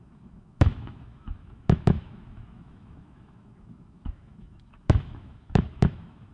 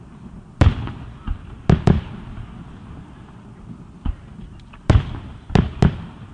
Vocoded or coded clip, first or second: first